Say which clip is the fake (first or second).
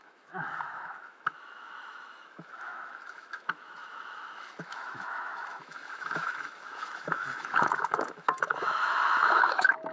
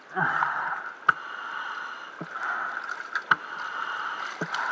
first